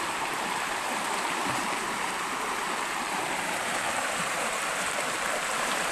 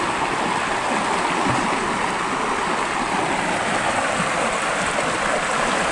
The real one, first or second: second